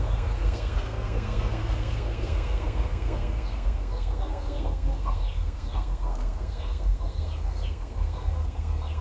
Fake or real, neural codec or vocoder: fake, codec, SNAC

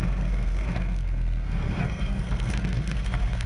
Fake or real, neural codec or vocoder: fake, codec, SNAC